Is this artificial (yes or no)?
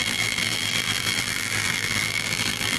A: yes